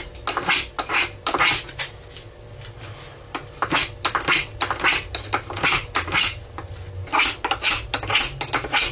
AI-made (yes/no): no